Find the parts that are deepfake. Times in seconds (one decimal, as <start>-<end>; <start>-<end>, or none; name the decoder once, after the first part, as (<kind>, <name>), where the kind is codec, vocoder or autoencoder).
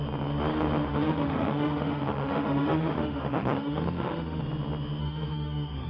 0.9-4.4 (autoencoder, DAC-VAE); 5.0-5.9